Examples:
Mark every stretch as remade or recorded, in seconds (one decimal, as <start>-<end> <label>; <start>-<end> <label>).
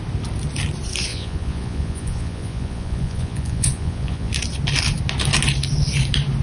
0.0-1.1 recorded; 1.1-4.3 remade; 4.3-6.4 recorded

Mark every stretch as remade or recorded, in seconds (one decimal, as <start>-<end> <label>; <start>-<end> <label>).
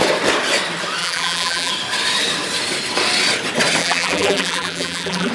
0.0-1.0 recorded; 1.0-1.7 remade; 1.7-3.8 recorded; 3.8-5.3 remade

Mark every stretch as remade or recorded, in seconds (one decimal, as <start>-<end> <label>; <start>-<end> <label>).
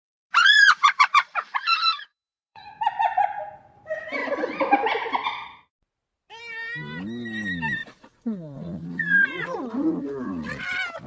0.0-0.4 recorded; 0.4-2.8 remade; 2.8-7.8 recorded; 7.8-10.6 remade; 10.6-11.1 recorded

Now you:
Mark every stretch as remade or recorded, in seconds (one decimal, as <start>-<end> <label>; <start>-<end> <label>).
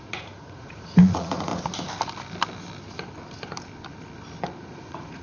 0.0-1.5 remade; 1.5-4.6 recorded; 4.6-5.2 remade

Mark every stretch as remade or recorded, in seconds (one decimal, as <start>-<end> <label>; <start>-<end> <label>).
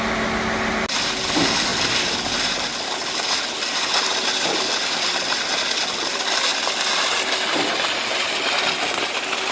0.0-9.5 recorded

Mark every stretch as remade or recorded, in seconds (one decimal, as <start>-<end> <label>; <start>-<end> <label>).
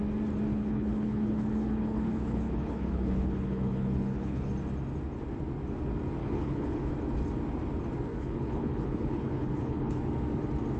0.0-0.5 recorded; 0.5-4.5 remade; 4.5-6.2 recorded; 6.2-6.9 remade; 6.9-8.1 recorded; 8.1-10.0 remade; 10.0-10.8 recorded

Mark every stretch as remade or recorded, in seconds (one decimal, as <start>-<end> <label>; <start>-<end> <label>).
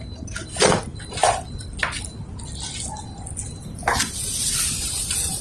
0.0-5.4 recorded